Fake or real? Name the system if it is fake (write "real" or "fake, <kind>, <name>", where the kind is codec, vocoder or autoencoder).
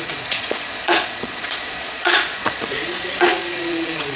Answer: fake, vocoder, Vocos